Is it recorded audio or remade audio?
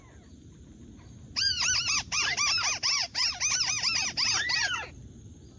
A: recorded